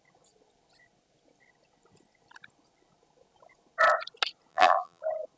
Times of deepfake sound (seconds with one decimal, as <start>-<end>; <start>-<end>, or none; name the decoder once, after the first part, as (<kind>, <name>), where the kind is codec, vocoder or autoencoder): 4.5-5.0 (vocoder, BigVGAN v2)